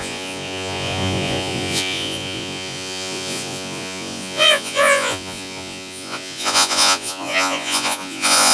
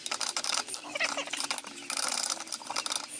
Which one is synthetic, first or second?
first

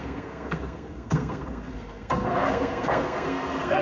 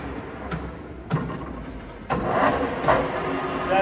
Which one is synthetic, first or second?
first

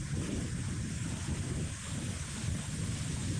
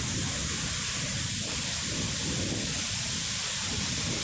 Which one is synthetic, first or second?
second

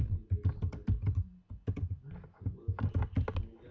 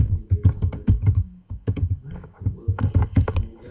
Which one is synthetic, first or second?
second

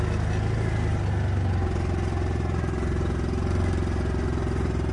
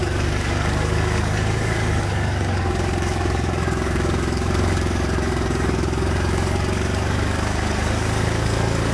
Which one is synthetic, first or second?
second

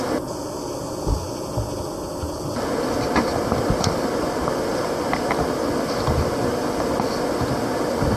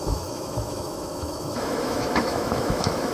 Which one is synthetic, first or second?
second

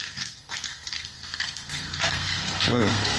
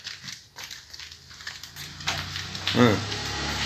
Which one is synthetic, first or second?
first